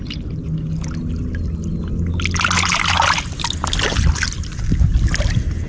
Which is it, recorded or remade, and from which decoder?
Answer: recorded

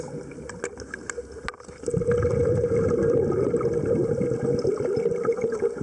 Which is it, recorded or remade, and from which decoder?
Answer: recorded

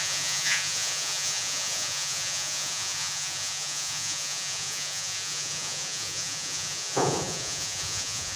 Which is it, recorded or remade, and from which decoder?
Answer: remade, vocoder, Vocos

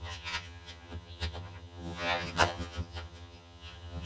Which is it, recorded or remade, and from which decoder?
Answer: remade, vocoder, HiFi-GAN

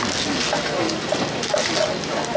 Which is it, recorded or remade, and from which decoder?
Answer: recorded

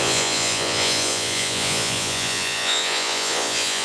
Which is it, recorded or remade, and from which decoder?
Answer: remade, vocoder, Vocos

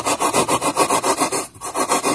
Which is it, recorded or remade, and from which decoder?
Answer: recorded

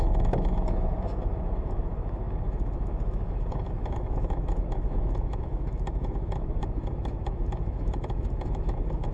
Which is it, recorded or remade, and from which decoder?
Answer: remade, autoencoder, DAC-VAE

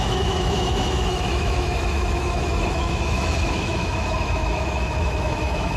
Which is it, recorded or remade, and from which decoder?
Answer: remade, autoencoder, DAC-VAE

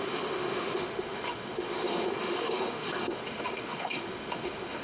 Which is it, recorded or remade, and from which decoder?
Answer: remade, autoencoder, DAC-VAE